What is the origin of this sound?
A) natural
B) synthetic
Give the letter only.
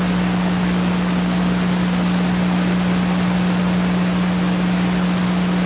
A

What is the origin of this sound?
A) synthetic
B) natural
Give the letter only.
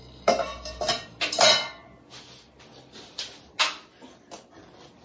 B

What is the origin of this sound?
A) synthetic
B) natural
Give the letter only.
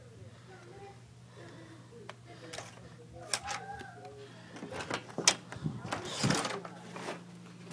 B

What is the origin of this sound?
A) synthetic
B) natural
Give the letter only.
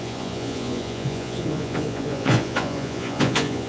A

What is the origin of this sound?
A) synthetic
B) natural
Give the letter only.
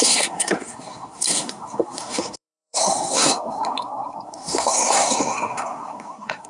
A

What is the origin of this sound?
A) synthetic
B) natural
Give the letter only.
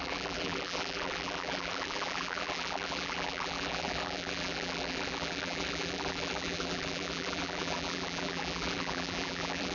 A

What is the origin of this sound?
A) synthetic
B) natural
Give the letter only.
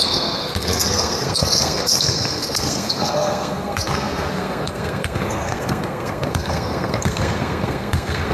A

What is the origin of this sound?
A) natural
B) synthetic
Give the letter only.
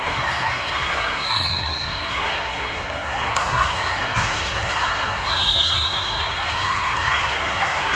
B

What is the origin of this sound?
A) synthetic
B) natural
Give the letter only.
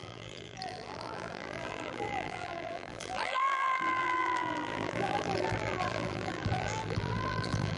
A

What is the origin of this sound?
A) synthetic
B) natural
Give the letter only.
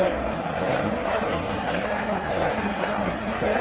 A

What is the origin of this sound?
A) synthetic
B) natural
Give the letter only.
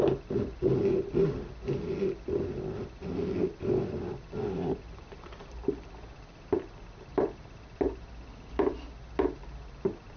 B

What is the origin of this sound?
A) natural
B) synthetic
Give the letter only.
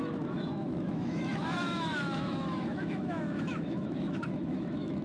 B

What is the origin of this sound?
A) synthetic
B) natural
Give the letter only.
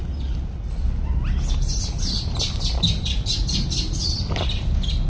B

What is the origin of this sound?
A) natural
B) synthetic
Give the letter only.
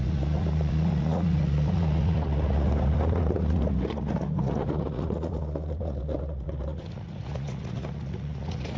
B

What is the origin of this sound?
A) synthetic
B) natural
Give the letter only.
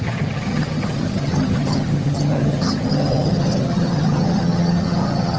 A